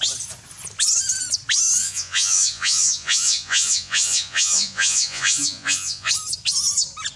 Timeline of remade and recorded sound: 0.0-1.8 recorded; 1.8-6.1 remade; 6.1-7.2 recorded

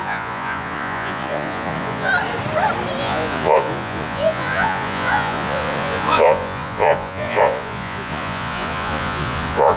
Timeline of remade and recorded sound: 0.0-2.1 remade; 2.1-3.0 recorded; 3.0-9.8 remade

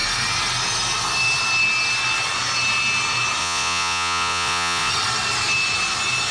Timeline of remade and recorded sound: 0.0-3.4 recorded; 3.4-4.9 remade; 4.9-6.3 recorded

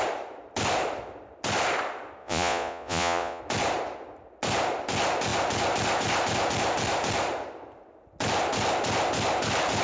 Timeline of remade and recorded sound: 0.0-2.2 recorded; 2.2-3.4 remade; 3.4-9.8 recorded

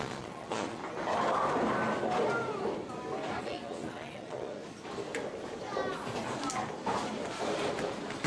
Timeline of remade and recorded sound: 0.0-0.8 remade; 0.8-3.4 recorded; 3.4-4.6 remade; 4.6-8.3 recorded

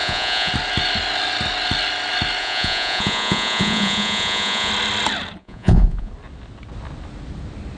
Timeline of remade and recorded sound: 0.0-0.5 remade; 0.5-2.4 recorded; 2.4-4.7 remade; 4.7-5.4 recorded; 5.4-6.1 remade; 6.1-7.8 recorded

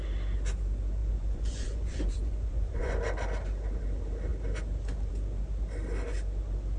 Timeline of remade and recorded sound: 0.0-1.0 recorded; 1.0-2.9 remade; 2.9-6.8 recorded

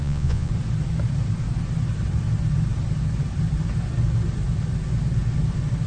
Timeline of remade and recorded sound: 0.0-0.5 remade; 0.5-5.9 recorded